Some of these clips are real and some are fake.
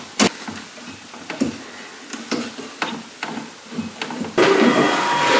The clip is real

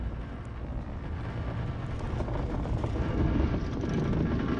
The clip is real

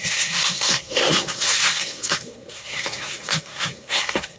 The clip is fake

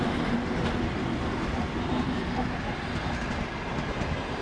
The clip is real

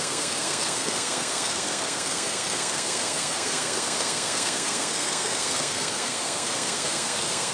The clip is fake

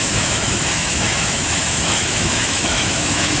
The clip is fake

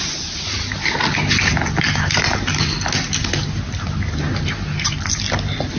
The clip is real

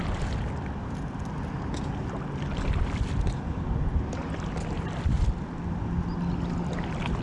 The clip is real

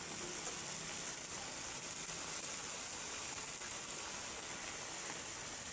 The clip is real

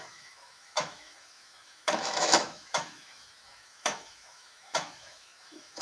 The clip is fake